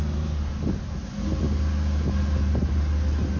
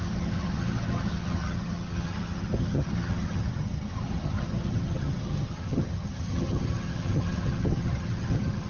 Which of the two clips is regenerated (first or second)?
second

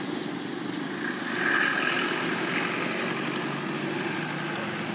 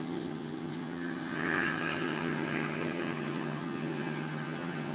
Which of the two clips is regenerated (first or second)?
second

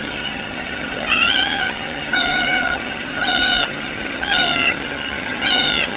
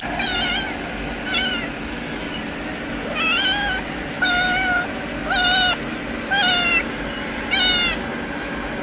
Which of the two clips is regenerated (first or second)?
first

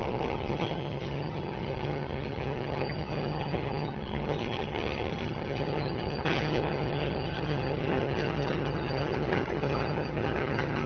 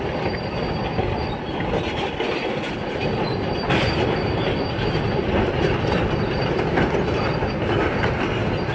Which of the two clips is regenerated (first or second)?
first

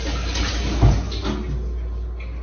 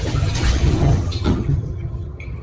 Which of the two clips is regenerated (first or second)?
second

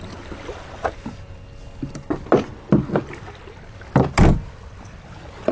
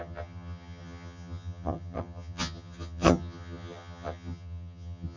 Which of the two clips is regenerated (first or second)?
second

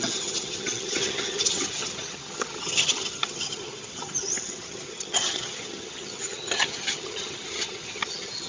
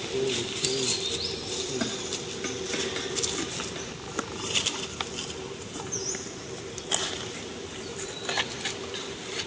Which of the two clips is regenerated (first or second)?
first